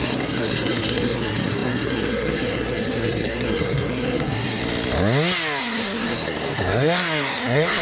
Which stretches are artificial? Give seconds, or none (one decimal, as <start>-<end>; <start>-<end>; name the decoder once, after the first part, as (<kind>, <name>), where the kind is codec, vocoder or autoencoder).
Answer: 0.0-4.6 (codec, SNAC); 5.6-7.8